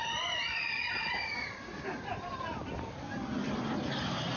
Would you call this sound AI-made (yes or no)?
no